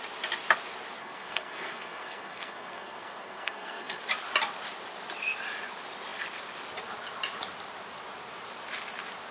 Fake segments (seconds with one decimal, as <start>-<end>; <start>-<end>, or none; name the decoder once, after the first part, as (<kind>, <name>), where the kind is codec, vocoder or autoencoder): 1.0-4.0 (codec, SNAC)